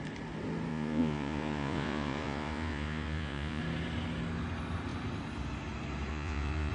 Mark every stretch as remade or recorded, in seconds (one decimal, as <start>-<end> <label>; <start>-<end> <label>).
0.0-0.7 recorded; 0.7-3.6 remade; 3.6-6.1 recorded; 6.1-6.7 remade